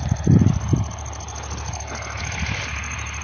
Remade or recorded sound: recorded